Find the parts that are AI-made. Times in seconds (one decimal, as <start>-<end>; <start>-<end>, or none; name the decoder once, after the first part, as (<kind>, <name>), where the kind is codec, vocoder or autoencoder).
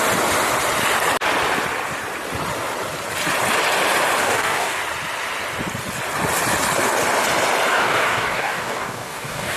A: 4.2-4.8 (codec, DAC); 7.7-9.6